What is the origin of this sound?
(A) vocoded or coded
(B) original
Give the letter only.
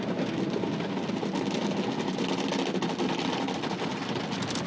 B